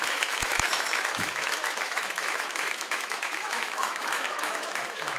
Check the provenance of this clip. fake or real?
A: fake